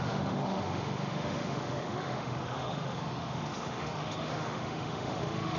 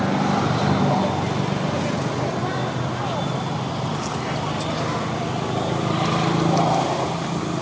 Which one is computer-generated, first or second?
first